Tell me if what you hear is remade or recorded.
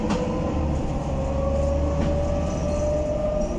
recorded